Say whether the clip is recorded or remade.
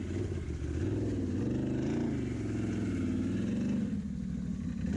recorded